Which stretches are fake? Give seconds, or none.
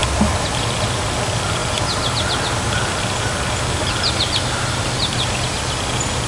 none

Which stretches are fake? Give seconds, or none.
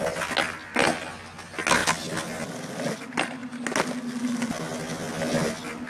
none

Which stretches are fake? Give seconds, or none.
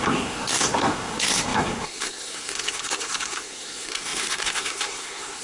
0.0-5.4 (codec, SNAC)